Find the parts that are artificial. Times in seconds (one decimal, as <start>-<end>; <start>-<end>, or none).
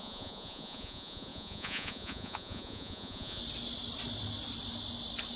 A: 0.0-3.4